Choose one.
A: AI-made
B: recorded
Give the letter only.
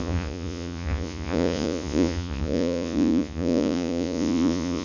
A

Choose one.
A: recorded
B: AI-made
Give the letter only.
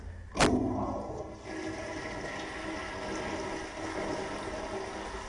A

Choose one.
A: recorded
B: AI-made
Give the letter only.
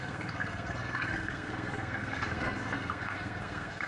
B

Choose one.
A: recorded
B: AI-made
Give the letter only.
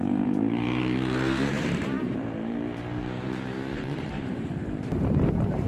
B